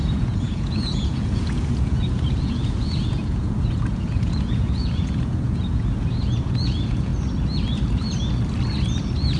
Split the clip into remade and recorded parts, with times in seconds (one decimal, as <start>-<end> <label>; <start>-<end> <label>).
0.0-7.1 remade; 7.1-9.4 recorded